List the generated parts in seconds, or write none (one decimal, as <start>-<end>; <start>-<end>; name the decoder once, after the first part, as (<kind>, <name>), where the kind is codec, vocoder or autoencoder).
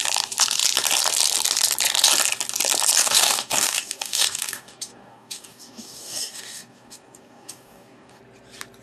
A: 3.0-8.2 (codec, DAC)